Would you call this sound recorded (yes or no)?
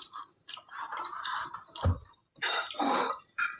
no